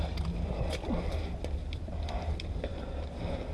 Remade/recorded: recorded